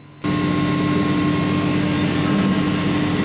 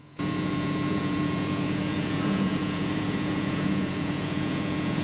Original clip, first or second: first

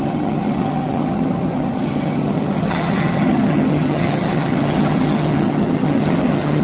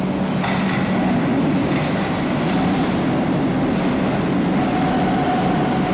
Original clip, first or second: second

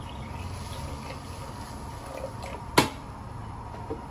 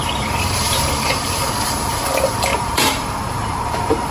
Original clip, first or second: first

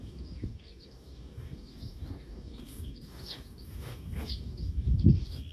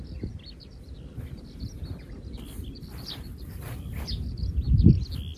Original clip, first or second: second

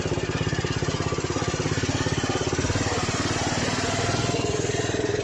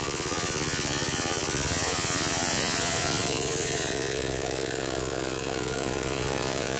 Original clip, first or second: first